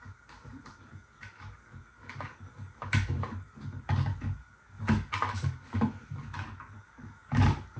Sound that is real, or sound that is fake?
fake